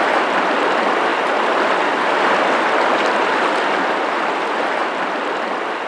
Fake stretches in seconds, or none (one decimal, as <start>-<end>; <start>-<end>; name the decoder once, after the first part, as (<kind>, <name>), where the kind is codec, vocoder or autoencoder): none